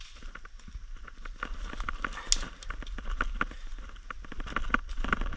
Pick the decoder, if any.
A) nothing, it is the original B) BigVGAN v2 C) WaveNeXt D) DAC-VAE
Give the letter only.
A